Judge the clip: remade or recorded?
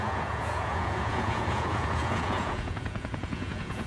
remade